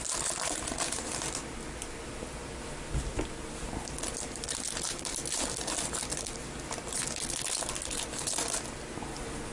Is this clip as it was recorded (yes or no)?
yes